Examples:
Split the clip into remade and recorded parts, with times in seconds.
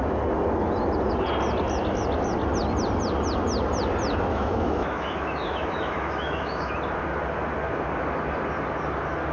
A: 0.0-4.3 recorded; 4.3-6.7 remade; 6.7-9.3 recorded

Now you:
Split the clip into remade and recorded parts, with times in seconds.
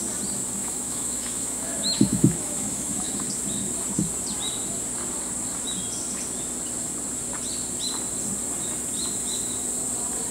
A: 0.0-0.6 recorded; 0.6-3.1 remade; 3.1-10.3 recorded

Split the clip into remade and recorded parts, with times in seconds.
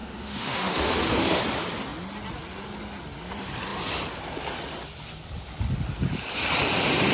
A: 0.0-1.4 remade; 1.4-7.1 recorded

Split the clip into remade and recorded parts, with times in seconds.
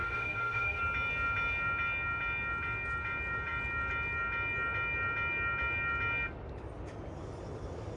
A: 0.0-0.8 remade; 0.8-8.0 recorded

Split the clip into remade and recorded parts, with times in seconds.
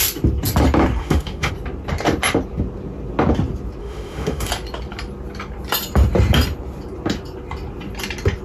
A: 0.0-1.0 recorded; 1.0-1.5 remade; 1.5-3.8 recorded; 3.8-4.5 remade; 4.5-8.4 recorded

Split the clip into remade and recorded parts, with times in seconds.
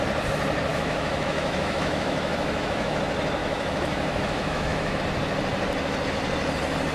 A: 0.0-0.7 recorded; 0.7-3.0 remade; 3.0-3.4 recorded; 3.4-5.0 remade; 5.0-6.9 recorded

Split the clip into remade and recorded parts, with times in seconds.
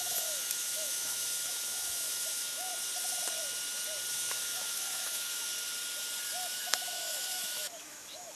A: 0.0-2.7 remade; 2.7-4.1 recorded; 4.1-5.5 remade; 5.5-6.5 recorded; 6.5-8.4 remade